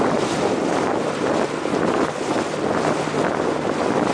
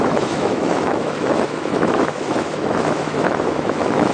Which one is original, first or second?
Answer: first